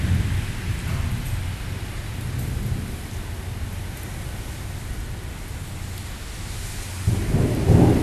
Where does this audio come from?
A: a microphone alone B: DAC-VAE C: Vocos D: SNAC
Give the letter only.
A